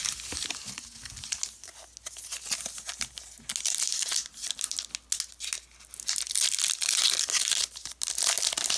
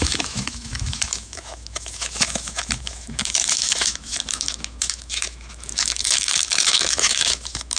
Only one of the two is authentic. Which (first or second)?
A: first